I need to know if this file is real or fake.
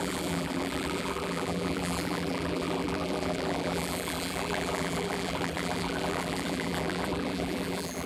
fake